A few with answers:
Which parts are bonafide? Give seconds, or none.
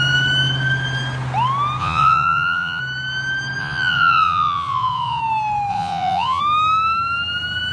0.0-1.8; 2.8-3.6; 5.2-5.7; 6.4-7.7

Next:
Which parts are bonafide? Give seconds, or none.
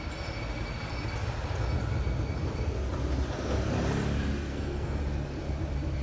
0.0-4.5; 5.0-6.0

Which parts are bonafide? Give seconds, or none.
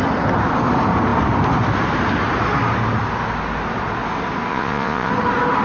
0.0-4.5; 5.1-5.6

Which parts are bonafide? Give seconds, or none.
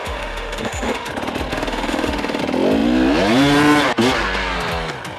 1.1-1.5; 2.4-5.2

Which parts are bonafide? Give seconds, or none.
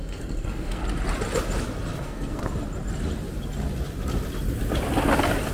0.8-2.0; 2.4-5.5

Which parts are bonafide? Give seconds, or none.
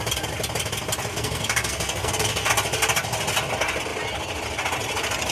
0.0-1.1; 2.5-5.3